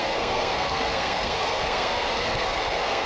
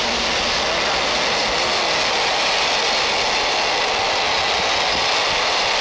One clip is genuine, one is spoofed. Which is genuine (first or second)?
second